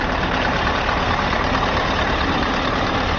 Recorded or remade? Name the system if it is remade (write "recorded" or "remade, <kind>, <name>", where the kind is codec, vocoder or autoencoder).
remade, vocoder, BigVGAN v2